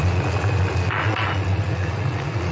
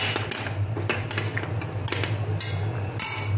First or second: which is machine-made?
first